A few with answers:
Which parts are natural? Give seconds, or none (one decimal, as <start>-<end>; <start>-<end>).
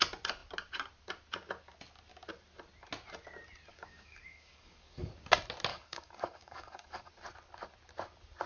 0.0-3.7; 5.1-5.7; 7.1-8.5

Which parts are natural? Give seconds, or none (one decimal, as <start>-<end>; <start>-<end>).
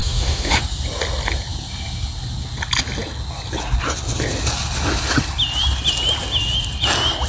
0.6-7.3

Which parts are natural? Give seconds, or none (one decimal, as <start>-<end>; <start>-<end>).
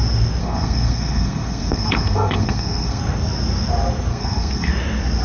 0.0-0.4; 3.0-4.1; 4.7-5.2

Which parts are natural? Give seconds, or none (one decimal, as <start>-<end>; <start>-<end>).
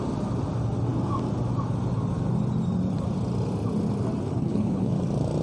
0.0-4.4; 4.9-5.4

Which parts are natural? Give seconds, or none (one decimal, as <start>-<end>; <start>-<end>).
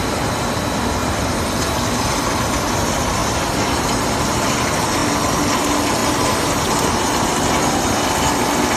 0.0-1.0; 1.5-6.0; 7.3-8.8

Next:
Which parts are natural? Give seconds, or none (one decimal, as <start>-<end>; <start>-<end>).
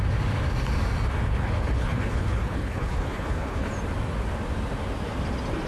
0.0-1.3; 3.7-5.7